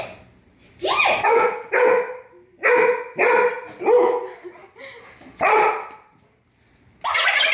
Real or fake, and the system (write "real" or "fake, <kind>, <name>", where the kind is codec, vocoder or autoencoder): real